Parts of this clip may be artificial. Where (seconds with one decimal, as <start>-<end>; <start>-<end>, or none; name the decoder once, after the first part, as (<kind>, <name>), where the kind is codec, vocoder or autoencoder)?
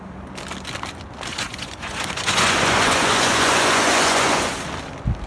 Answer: 1.3-4.5 (vocoder, Vocos)